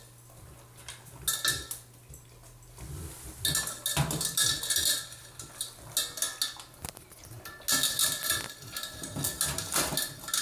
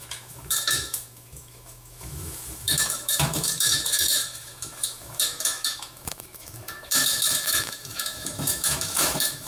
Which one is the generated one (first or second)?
second